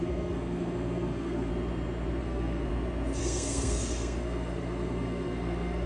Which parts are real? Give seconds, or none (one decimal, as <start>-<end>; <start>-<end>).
1.5-2.2; 2.7-3.2